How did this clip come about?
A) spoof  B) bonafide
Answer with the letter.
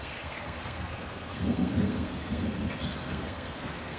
A